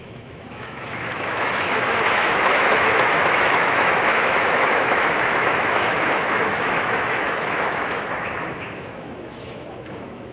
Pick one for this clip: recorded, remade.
remade